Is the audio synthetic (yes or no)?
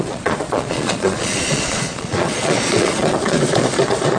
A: yes